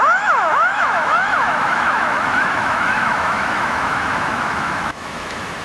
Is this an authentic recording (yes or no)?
no